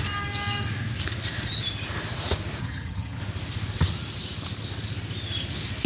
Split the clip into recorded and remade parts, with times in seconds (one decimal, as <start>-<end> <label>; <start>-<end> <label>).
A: 0.0-2.6 recorded; 2.6-3.2 remade; 3.2-5.9 recorded